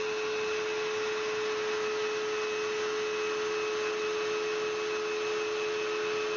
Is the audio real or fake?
real